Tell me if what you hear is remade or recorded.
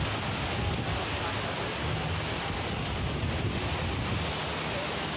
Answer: recorded